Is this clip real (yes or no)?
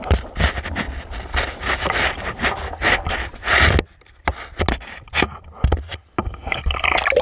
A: yes